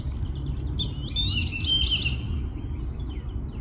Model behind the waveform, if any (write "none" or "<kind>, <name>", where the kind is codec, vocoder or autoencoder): none